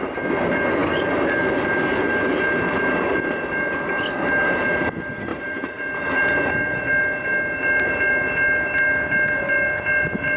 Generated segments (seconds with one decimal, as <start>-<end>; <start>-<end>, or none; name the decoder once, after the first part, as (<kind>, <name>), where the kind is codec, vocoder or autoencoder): 5.3-6.2 (vocoder, BigVGAN v2)

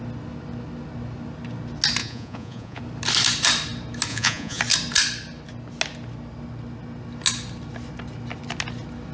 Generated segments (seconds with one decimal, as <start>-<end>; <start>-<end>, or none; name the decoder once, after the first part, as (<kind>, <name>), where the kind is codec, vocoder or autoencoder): 2.0-2.8 (vocoder, Vocos); 4.1-4.6

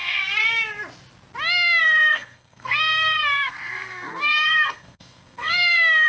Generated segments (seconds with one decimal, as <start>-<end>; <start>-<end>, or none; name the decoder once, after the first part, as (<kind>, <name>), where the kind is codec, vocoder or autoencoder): 0.0-0.4 (codec, SNAC); 1.8-6.1

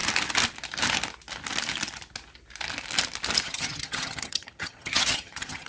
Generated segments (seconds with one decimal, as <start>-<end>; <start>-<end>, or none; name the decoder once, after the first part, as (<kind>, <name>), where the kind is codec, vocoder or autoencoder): 3.4-5.7 (vocoder, HiFi-GAN)

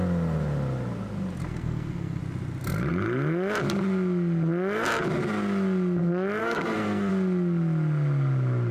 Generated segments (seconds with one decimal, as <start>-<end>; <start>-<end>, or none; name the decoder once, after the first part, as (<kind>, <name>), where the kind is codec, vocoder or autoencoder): 1.5-2.2 (codec, SNAC); 6.4-7.1